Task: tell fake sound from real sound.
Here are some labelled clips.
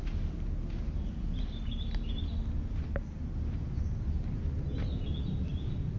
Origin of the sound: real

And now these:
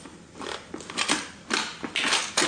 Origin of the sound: real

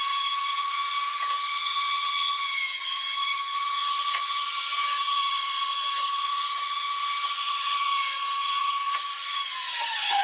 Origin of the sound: fake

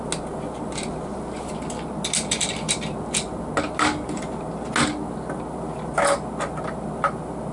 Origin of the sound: real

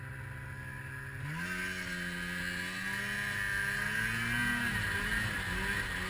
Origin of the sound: real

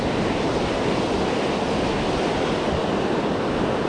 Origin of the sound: real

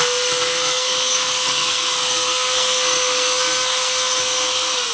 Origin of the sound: fake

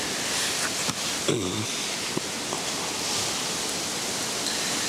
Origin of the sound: real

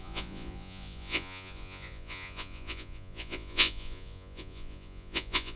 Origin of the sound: fake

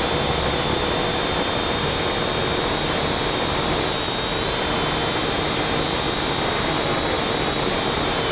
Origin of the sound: real